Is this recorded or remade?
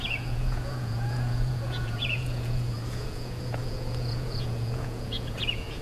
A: remade